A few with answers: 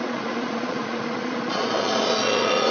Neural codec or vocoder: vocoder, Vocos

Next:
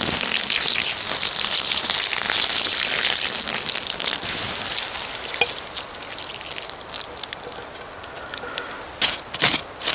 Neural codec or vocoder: none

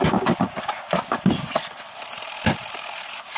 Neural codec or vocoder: none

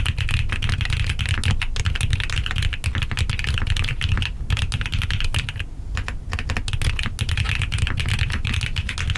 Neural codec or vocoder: none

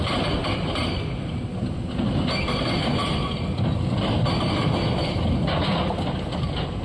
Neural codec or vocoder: none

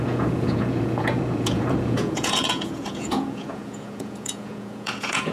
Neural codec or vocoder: vocoder, Vocos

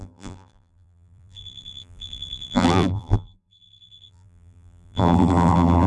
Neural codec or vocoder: vocoder, BigVGAN v2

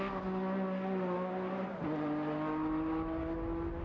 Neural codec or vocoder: none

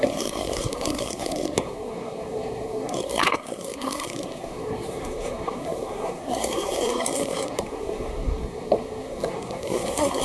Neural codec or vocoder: codec, SNAC